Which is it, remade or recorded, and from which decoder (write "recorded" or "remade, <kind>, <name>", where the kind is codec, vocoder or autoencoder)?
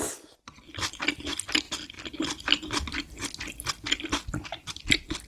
recorded